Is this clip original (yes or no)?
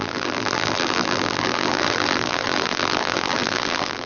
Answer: no